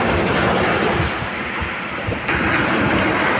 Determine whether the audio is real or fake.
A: real